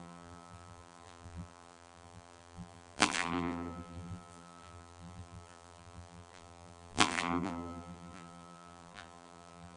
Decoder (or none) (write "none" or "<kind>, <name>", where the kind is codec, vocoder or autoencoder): vocoder, BigVGAN v2